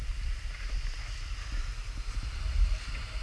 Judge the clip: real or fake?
real